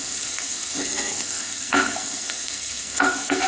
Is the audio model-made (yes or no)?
yes